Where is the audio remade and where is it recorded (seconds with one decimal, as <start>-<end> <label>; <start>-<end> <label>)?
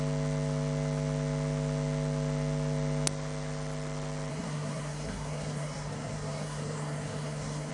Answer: 0.0-4.3 recorded; 4.3-7.7 remade